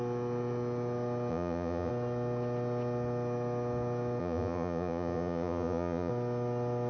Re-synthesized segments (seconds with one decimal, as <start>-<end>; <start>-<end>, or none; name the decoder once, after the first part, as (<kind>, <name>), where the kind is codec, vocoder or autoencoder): 1.3-1.9 (vocoder, Vocos); 4.2-6.1